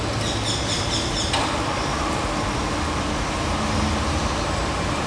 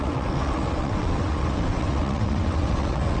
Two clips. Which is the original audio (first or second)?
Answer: first